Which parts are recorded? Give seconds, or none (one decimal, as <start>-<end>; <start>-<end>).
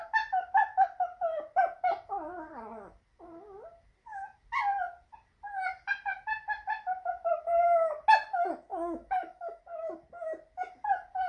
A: 0.0-8.7; 9.6-11.3